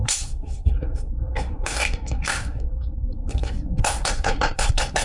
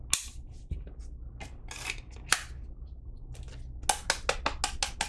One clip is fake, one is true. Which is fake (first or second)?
first